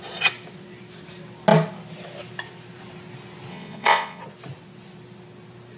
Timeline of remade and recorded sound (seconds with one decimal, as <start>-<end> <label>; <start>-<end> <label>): 0.0-3.5 recorded; 3.5-4.2 remade; 4.2-5.8 recorded